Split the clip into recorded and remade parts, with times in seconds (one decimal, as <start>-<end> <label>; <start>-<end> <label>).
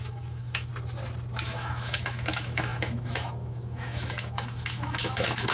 0.0-0.7 remade; 0.7-1.4 recorded; 1.4-5.5 remade